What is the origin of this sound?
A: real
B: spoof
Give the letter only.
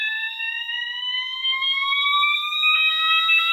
A